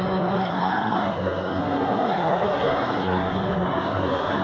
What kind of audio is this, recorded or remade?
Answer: remade